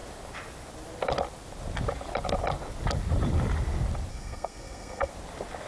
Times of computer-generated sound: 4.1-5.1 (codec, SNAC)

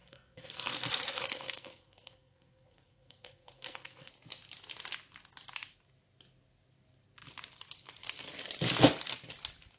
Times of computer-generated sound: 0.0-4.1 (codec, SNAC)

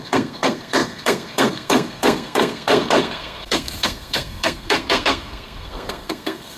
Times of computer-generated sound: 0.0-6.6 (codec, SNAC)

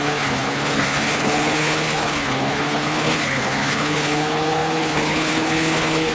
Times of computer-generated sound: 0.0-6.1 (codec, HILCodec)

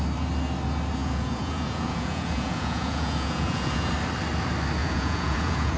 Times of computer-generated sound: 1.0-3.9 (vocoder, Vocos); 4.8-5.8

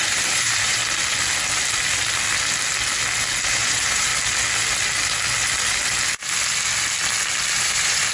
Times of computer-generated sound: 0.0-0.8 (vocoder, BigVGAN v2); 3.5-4.1; 7.5-8.1

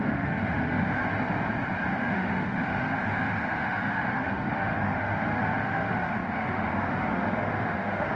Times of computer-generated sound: 0.0-1.0 (autoencoder, DAC-VAE); 1.9-8.2

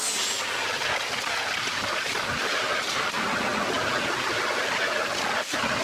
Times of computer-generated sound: none